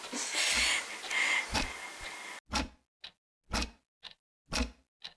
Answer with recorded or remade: recorded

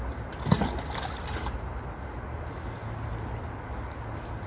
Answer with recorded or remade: recorded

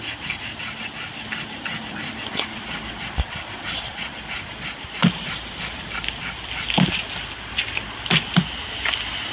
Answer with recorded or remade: recorded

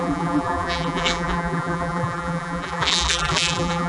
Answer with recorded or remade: remade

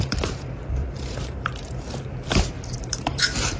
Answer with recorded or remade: remade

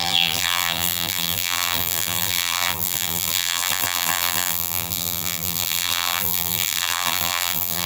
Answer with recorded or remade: remade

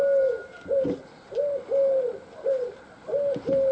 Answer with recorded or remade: recorded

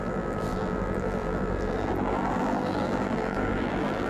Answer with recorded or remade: remade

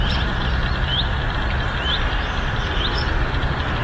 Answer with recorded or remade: remade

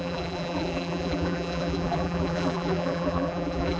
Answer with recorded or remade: remade